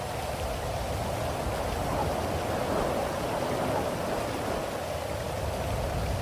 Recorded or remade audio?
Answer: recorded